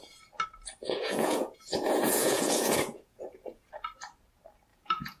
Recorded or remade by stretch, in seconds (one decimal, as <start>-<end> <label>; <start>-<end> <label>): 0.0-0.8 recorded; 0.8-3.7 remade; 3.7-4.7 recorded; 4.7-5.2 remade